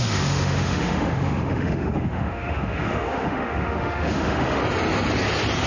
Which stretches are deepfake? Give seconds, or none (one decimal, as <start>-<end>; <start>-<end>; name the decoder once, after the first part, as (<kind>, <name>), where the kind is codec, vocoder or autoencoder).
0.0-4.6 (autoencoder, DAC-VAE)